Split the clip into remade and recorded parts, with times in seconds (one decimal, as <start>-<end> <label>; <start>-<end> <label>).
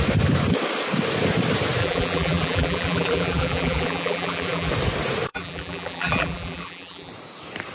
0.0-1.8 recorded; 1.8-4.7 remade; 4.7-5.3 recorded; 5.3-7.1 remade; 7.1-7.7 recorded